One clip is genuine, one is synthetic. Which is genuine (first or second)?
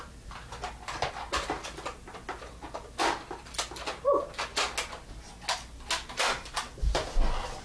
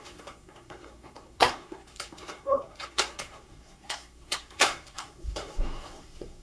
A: first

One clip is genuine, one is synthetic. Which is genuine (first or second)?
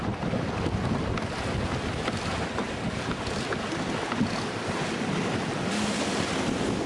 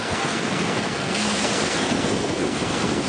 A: first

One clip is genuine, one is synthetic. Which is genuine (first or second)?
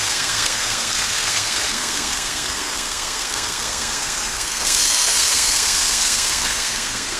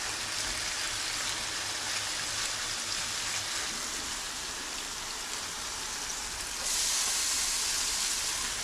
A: second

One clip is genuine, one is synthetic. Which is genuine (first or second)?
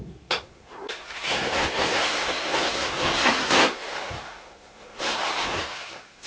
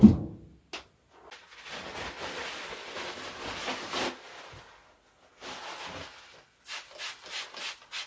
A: second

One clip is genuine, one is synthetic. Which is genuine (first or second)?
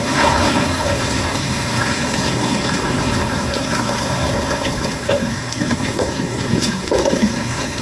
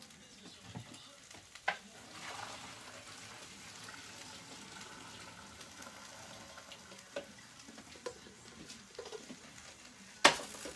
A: second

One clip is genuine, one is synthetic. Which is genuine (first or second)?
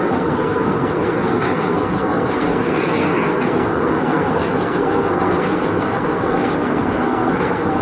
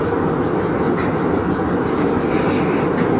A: second